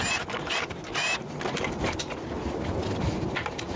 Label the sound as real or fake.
real